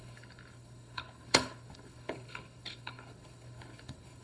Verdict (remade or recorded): remade